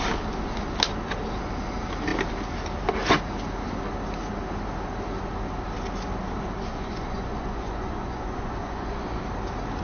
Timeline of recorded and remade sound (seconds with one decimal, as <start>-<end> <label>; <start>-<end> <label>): 0.0-6.7 recorded; 6.7-9.2 remade; 9.2-9.8 recorded